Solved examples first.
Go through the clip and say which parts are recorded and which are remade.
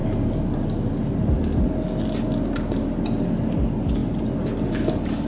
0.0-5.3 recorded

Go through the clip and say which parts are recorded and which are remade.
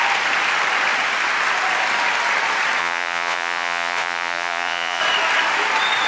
0.0-2.8 recorded; 2.8-5.0 remade; 5.0-6.1 recorded